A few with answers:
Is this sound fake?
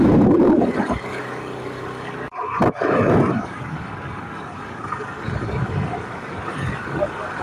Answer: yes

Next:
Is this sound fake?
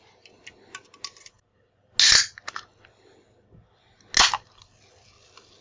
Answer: no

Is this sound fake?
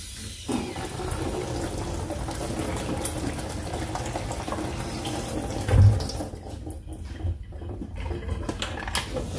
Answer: no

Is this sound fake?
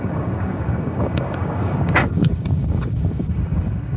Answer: yes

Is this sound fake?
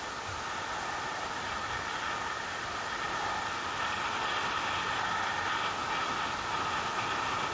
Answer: no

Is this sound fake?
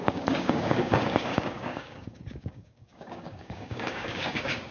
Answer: yes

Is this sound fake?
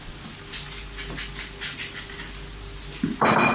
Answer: no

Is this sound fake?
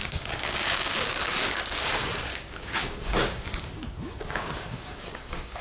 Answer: yes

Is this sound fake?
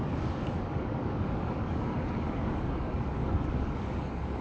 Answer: yes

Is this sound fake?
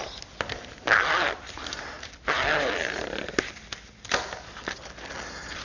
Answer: no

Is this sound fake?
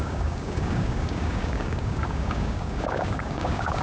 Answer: yes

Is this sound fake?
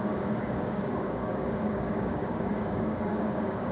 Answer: yes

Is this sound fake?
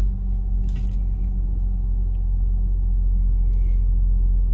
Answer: no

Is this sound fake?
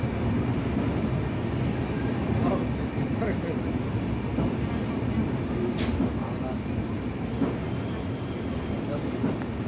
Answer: no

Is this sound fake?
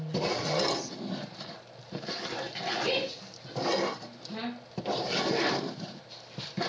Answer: no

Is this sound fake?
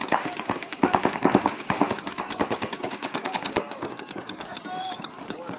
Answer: yes